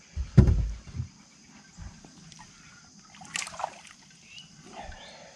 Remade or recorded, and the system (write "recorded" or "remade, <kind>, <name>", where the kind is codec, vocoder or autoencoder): recorded